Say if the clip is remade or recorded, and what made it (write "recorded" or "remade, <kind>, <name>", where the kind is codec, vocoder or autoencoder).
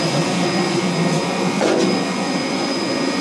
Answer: remade, vocoder, Vocos